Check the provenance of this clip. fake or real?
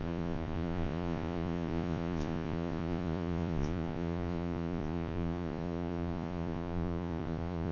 fake